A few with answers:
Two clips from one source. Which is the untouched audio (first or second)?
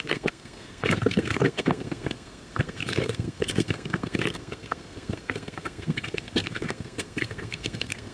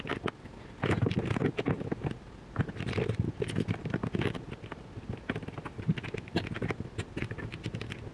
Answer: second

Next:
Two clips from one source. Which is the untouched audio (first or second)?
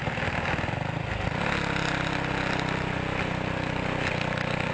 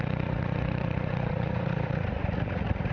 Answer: first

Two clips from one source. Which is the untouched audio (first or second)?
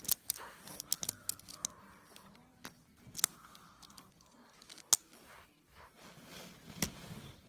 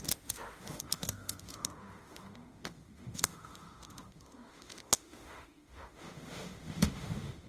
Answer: first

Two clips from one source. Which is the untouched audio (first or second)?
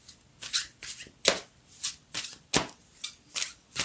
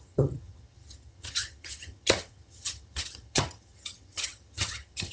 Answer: first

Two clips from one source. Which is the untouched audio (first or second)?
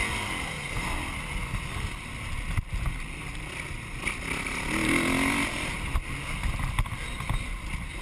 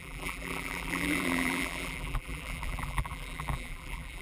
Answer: first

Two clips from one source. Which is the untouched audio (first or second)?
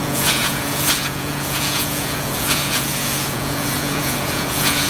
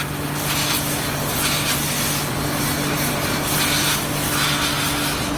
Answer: second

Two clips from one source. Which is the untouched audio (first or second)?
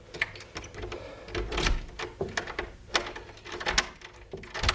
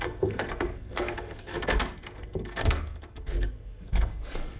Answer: first